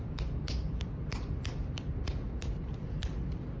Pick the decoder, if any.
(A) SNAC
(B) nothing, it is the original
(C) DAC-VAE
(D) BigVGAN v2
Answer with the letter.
B